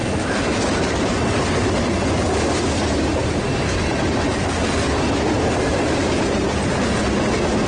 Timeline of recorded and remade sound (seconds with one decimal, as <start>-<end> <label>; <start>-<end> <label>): 0.0-7.7 recorded